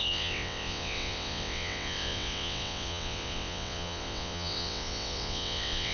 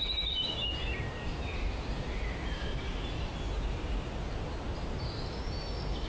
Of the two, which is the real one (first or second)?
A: second